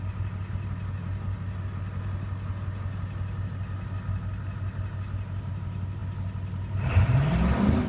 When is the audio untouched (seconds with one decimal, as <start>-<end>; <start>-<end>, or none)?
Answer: 0.0-7.9